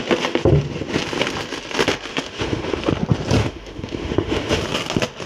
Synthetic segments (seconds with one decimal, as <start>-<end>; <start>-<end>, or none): 2.1-2.8; 3.4-4.6